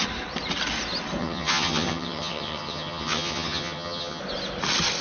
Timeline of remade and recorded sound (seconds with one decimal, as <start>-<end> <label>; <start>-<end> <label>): 0.0-1.2 recorded; 1.2-4.2 remade; 4.2-5.0 recorded